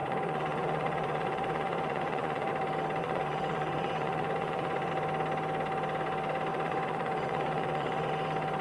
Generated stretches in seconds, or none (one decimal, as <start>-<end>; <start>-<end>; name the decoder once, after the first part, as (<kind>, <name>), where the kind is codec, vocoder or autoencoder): 0.0-2.5 (vocoder, Vocos); 3.0-4.9; 6.5-8.1